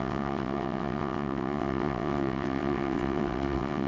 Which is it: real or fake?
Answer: fake